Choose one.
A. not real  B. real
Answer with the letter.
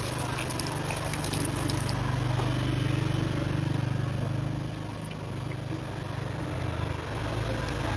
B